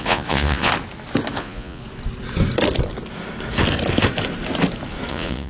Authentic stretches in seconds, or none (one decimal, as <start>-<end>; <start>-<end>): 0.7-1.4; 1.8-5.1